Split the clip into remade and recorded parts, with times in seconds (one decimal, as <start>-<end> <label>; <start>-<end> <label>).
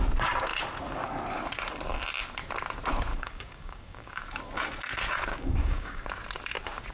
0.0-3.1 recorded; 3.1-4.2 remade; 4.2-5.3 recorded; 5.3-6.1 remade; 6.1-6.9 recorded